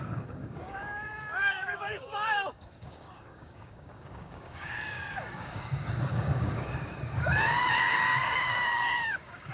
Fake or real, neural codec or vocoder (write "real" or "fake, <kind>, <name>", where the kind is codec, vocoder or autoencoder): fake, codec, DAC